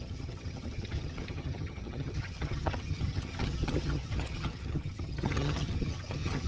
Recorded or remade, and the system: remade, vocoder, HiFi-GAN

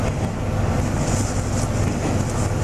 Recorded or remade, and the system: recorded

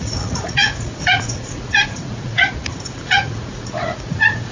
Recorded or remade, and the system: remade, vocoder, Vocos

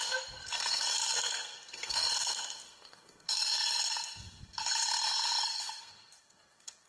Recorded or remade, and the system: remade, codec, SNAC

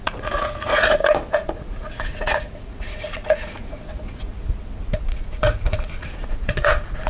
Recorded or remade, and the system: remade, vocoder, Vocos